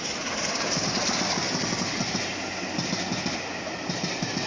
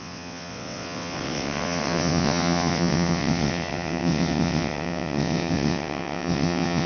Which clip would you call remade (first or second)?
second